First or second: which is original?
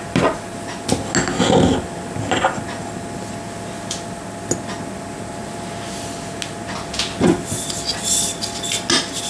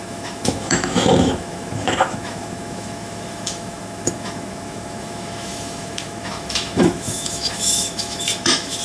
first